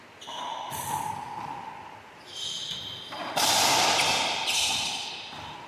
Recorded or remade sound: recorded